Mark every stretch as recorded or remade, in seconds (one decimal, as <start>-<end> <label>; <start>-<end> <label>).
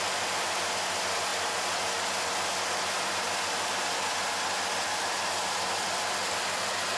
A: 0.0-7.0 recorded